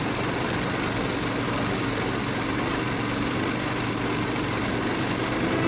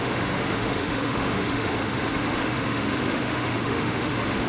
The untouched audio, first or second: first